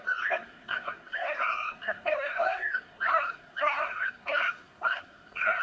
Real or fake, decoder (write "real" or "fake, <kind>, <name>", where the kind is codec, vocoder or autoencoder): fake, codec, SNAC